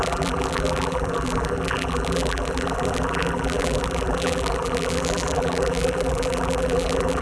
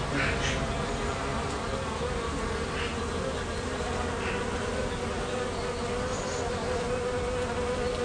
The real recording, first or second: second